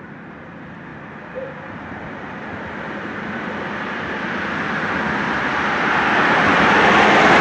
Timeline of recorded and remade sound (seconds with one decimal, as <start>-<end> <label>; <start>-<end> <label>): 0.0-7.4 recorded